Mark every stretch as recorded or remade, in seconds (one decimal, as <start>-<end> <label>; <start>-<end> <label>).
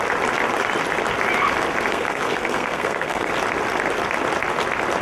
0.0-1.9 recorded; 1.9-3.3 remade; 3.3-5.0 recorded